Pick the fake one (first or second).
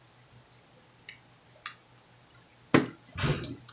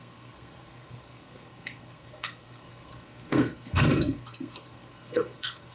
second